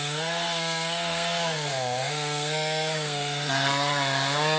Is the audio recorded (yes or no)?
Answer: no